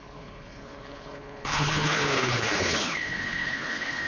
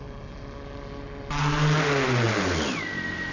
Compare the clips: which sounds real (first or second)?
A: second